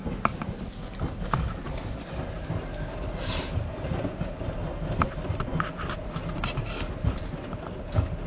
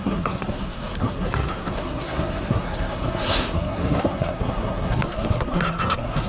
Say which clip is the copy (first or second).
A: second